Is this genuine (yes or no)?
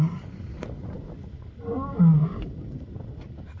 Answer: yes